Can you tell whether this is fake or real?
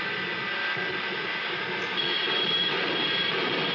real